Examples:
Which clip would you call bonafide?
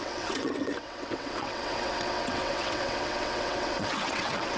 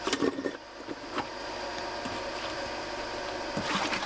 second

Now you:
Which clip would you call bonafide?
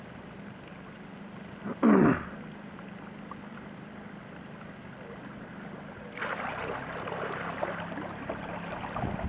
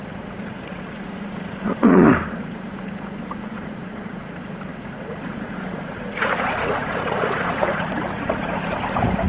first